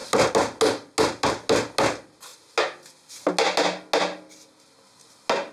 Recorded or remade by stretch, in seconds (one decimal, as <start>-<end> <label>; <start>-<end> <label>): 0.0-5.5 recorded